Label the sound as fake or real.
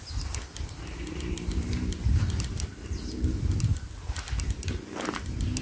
real